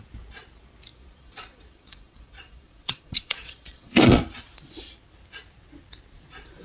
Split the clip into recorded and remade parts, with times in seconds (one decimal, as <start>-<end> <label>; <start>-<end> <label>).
0.0-0.9 recorded; 0.9-4.2 remade; 4.2-6.6 recorded

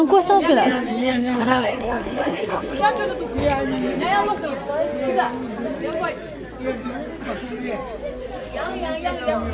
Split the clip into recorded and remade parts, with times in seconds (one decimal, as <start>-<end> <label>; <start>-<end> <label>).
0.0-1.0 recorded; 1.0-2.8 remade; 2.8-9.5 recorded

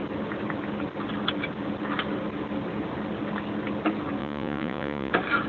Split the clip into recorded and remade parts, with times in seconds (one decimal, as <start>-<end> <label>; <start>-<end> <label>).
0.0-4.2 recorded; 4.2-5.1 remade; 5.1-5.5 recorded